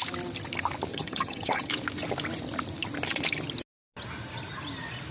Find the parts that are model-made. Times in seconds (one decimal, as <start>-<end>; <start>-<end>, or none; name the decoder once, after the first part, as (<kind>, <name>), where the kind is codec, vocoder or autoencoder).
0.9-1.7 (vocoder, HiFi-GAN)